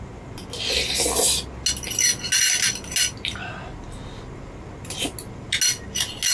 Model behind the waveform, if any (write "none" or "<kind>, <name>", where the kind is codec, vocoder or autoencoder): none